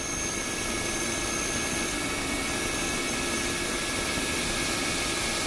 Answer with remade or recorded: recorded